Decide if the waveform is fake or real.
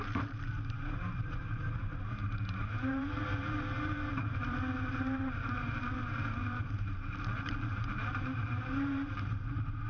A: fake